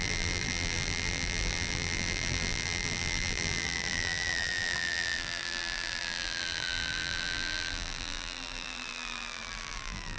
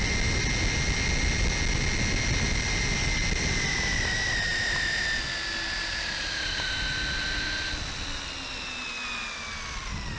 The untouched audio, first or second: second